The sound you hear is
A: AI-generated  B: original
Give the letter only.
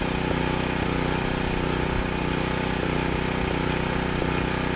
B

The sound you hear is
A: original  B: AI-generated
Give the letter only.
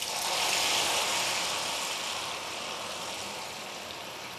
A